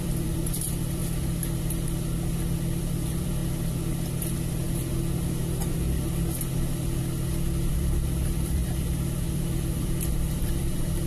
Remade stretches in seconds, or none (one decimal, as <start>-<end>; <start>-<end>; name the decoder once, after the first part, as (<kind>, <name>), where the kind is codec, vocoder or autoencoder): 0.0-1.0 (vocoder, BigVGAN v2); 2.8-3.4; 7.7-11.1